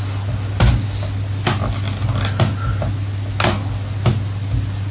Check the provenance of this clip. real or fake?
real